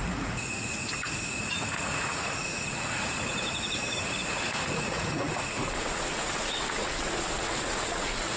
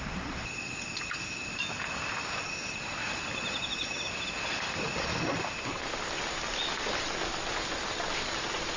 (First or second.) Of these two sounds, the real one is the second